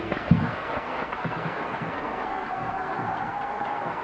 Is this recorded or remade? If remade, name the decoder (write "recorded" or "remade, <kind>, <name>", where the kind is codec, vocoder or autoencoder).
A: remade, codec, SNAC